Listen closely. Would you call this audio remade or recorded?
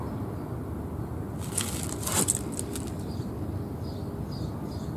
recorded